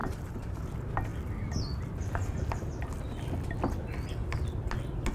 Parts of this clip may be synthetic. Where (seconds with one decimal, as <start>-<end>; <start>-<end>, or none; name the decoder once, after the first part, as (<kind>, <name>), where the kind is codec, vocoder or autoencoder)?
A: 0.0-0.6 (vocoder, BigVGAN v2)